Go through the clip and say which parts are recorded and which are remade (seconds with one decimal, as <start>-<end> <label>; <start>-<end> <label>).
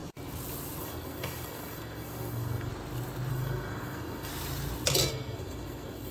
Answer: 0.0-0.8 recorded; 0.8-2.7 remade; 2.7-3.3 recorded; 3.3-4.3 remade; 4.3-5.1 recorded; 5.1-6.1 remade